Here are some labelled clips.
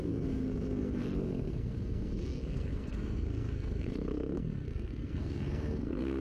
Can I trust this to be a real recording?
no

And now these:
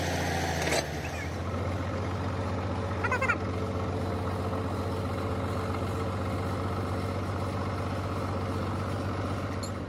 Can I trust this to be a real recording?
yes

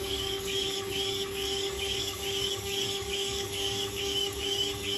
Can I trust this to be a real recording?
no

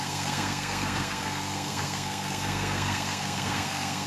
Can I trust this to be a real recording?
no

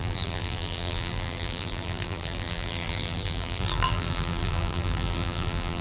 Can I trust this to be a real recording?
no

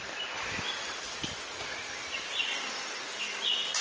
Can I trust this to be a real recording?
yes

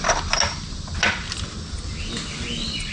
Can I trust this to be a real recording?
yes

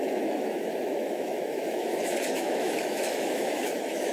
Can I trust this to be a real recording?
no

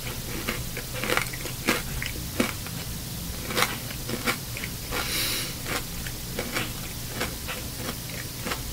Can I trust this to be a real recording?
yes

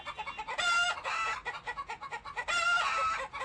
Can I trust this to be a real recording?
yes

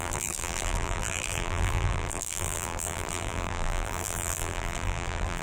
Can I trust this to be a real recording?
no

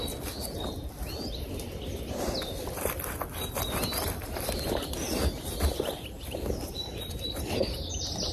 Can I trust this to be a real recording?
yes